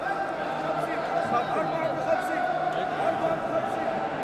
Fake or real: real